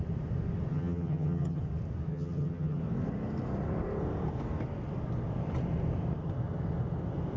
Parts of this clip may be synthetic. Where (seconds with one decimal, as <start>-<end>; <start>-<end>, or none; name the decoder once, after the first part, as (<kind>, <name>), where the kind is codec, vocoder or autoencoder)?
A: 0.7-1.6 (vocoder, HiFi-GAN); 2.1-2.8